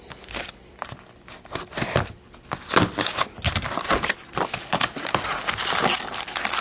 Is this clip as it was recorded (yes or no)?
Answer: yes